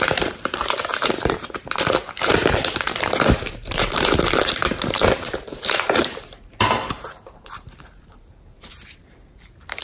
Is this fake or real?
fake